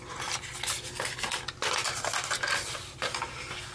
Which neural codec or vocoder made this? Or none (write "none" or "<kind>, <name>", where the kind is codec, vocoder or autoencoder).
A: none